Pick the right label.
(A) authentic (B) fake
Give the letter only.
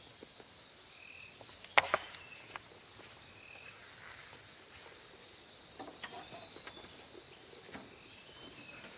A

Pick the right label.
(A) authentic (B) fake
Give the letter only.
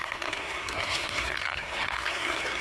B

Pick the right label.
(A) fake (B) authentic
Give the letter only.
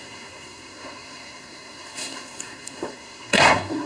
A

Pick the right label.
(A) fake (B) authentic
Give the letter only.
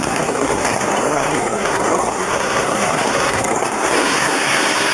A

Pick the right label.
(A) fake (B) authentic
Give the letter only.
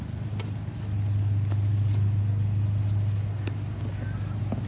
B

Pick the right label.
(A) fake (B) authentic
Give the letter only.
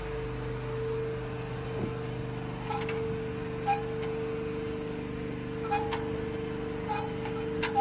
B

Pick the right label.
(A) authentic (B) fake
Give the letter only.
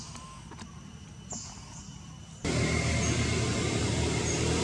A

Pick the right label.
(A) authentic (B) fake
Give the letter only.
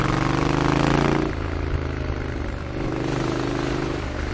A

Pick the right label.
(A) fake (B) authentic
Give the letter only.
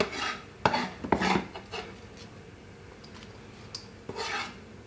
B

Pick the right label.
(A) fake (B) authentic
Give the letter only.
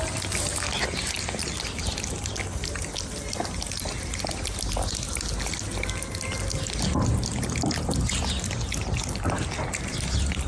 B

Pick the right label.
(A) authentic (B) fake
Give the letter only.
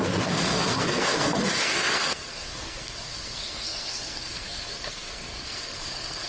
B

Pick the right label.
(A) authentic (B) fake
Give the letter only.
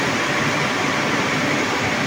A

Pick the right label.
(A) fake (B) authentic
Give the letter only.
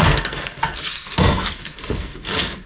A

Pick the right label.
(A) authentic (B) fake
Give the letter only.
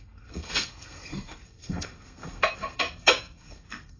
B